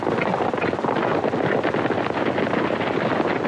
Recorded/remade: recorded